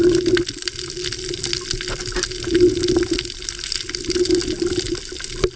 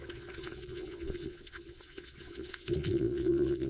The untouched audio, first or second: first